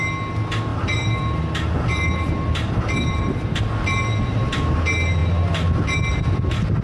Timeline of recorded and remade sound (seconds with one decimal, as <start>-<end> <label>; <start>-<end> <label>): 0.0-0.7 recorded; 0.7-3.6 remade; 3.6-6.8 recorded

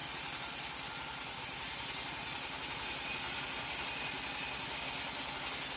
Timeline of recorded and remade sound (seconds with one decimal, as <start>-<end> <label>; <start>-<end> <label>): 0.0-5.8 recorded

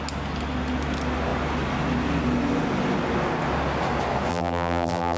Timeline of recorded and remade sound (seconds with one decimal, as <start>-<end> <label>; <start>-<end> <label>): 0.0-4.3 recorded; 4.3-5.2 remade

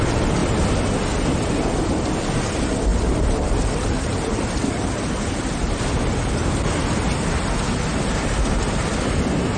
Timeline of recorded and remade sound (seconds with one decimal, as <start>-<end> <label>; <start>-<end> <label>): 0.0-2.9 recorded; 2.9-7.2 remade; 7.2-7.9 recorded; 7.9-8.9 remade; 8.9-9.6 recorded